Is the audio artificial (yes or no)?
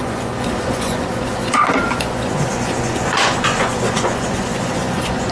yes